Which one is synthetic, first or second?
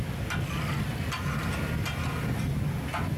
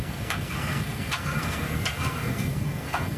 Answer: second